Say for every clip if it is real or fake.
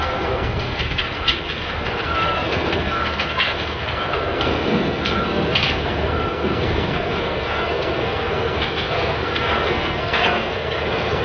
fake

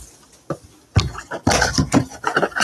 real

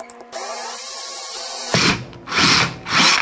real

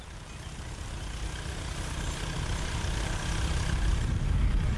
real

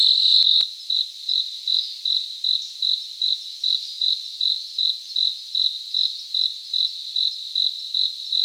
real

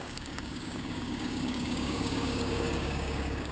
fake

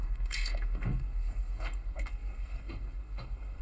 fake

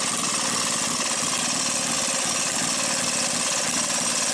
real